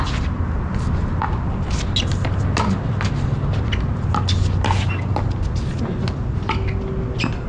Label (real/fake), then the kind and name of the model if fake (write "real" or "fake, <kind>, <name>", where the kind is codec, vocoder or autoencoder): real